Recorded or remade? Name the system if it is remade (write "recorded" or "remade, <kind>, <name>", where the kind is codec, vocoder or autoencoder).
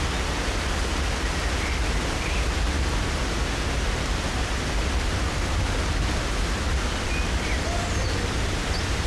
recorded